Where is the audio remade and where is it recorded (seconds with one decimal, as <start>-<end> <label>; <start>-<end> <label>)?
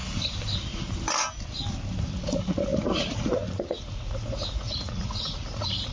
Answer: 0.0-2.0 recorded; 2.0-5.9 remade